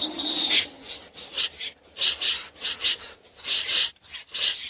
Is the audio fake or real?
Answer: real